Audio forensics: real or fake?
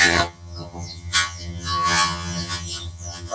fake